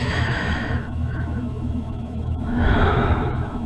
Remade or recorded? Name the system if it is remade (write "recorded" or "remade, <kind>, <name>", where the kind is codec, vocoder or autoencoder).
remade, autoencoder, DAC-VAE